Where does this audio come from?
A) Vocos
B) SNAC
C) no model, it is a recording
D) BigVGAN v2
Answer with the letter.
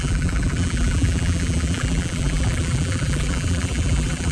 D